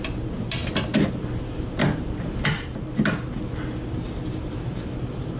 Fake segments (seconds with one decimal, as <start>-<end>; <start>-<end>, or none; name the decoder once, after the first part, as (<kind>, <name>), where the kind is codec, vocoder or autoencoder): none